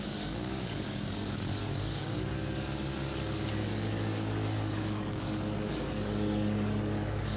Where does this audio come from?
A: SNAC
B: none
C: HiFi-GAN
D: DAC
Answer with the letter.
D